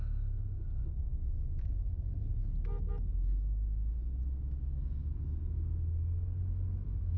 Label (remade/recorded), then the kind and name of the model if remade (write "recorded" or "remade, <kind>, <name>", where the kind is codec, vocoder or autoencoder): recorded